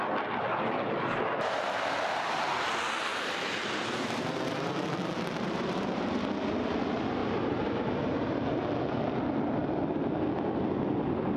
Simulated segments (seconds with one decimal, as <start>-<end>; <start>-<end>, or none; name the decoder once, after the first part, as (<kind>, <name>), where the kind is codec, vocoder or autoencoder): 3.1-6.0 (vocoder, BigVGAN v2); 7.2-8.8